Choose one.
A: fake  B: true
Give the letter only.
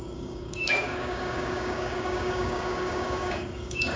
A